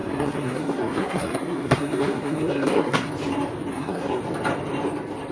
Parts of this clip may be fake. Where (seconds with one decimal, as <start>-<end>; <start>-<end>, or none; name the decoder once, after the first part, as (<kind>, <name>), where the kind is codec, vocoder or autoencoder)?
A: 0.0-3.1 (codec, SNAC); 3.7-4.2